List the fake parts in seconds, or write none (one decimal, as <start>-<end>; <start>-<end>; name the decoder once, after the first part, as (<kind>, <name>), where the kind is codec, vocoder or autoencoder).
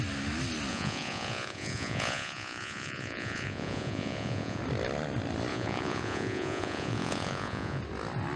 0.7-4.6 (vocoder, Vocos); 5.5-7.8